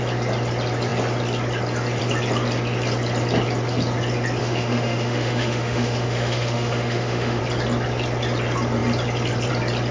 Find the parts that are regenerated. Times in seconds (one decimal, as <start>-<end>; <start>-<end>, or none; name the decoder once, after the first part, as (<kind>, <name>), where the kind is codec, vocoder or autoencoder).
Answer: 4.4-7.4 (autoencoder, DAC-VAE)